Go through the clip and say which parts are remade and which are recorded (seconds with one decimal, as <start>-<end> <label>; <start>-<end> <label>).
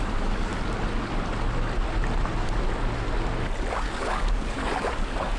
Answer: 0.0-0.5 remade; 0.5-3.7 recorded; 3.7-5.4 remade